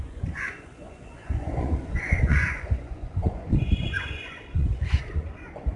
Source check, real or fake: fake